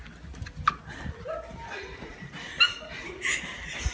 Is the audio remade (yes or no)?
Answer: no